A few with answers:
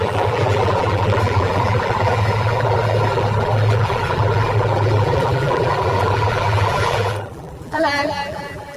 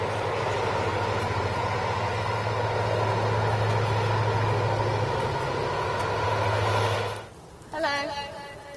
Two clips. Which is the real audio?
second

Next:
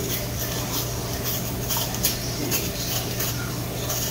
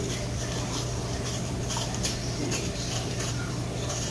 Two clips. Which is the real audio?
first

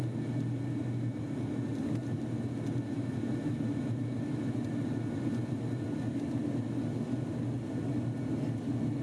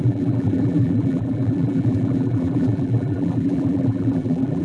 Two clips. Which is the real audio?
first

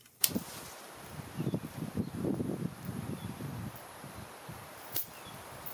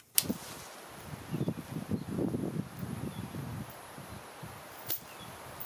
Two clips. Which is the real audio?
second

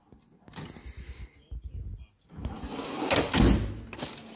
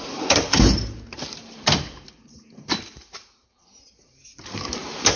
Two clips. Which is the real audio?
first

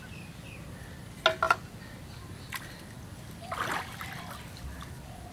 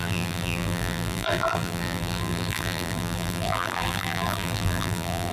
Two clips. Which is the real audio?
first